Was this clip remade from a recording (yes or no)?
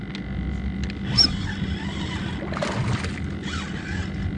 no